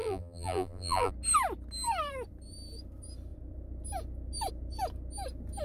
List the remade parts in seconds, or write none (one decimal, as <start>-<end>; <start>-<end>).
0.0-1.1